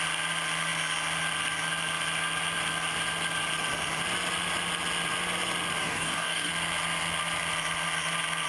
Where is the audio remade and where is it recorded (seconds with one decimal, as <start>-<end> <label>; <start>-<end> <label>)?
0.0-5.8 recorded; 5.8-6.5 remade; 6.5-8.5 recorded

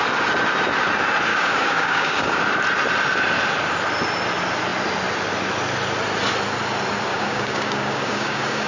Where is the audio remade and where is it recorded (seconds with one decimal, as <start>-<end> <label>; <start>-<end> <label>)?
0.0-1.3 recorded; 1.3-2.4 remade; 2.4-7.1 recorded; 7.1-8.7 remade

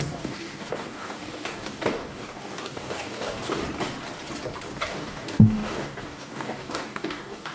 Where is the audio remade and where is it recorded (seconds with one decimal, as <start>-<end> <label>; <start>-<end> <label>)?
0.0-3.6 remade; 3.6-4.7 recorded; 4.7-7.5 remade

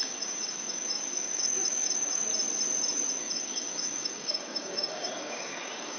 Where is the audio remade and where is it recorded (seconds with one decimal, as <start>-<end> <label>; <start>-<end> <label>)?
0.0-2.2 remade; 2.2-3.1 recorded; 3.1-6.0 remade

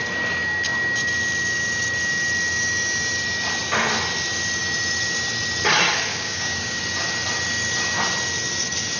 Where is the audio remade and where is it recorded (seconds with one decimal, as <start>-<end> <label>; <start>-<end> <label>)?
0.0-6.1 recorded; 6.1-6.8 remade; 6.8-9.0 recorded

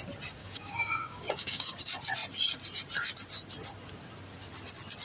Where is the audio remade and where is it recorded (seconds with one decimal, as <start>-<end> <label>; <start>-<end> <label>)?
0.0-0.4 recorded; 0.4-1.8 remade; 1.8-5.0 recorded

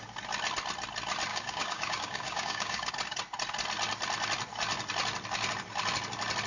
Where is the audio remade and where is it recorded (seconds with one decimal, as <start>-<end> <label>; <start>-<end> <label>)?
0.0-1.3 recorded; 1.3-2.9 remade; 2.9-6.5 recorded